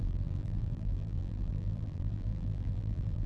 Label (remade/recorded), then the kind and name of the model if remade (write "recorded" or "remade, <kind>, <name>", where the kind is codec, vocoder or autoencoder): remade, vocoder, BigVGAN v2